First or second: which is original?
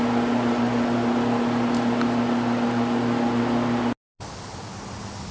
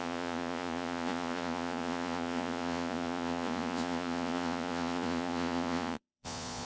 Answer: first